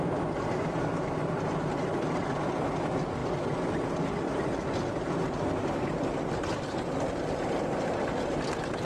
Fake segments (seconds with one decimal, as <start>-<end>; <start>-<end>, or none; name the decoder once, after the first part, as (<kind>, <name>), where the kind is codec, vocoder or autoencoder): none